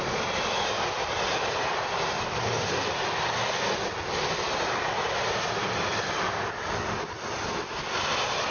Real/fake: real